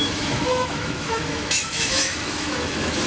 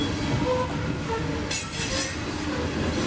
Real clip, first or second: second